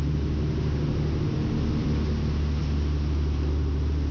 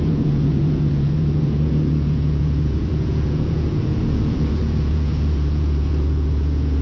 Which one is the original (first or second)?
first